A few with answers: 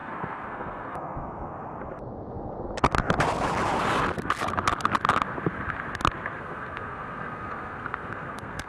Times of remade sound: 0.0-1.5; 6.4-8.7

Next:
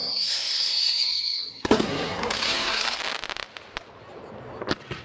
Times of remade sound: 0.0-3.0